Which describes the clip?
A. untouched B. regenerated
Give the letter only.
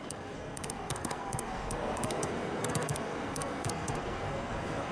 B